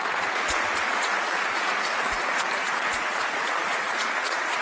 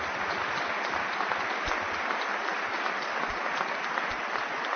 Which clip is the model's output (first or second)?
first